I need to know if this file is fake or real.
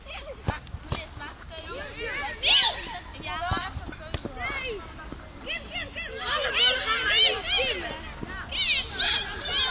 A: real